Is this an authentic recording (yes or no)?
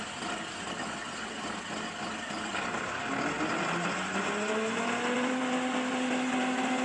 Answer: yes